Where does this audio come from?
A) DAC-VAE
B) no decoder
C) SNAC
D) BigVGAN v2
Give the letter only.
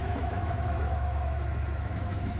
A